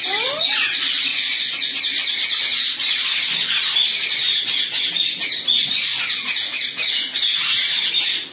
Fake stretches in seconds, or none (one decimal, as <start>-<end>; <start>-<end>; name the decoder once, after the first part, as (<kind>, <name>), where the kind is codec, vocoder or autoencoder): none